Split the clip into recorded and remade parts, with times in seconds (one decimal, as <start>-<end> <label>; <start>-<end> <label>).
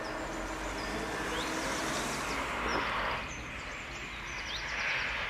0.0-5.3 recorded